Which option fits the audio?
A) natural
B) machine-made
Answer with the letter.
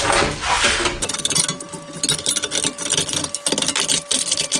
A